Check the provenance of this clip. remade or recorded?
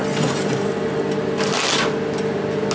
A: recorded